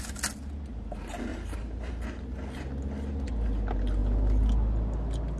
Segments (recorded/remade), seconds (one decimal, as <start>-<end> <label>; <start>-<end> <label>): 0.0-1.3 recorded; 1.3-1.9 remade; 1.9-5.4 recorded